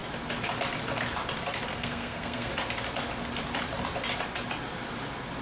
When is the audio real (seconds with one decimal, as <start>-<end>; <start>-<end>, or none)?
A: 0.0-1.7; 2.5-5.4